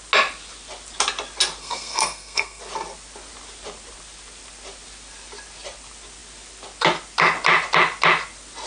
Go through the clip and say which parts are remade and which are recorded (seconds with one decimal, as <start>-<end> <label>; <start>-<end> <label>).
0.0-1.6 recorded; 1.6-2.6 remade; 2.6-8.7 recorded